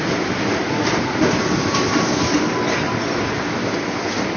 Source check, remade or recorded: remade